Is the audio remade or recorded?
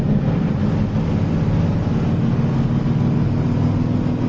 recorded